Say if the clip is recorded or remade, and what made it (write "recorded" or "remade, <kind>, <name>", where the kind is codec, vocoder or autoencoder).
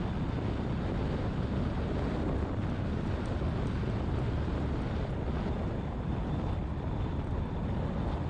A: recorded